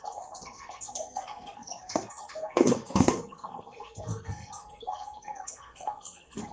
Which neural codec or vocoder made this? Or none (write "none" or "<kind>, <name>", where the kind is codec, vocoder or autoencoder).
codec, SNAC